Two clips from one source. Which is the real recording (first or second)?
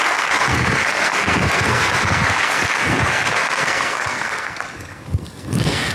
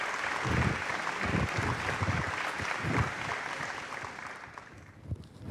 second